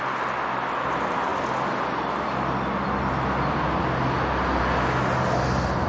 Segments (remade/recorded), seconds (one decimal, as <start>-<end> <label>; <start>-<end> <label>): 0.0-5.9 recorded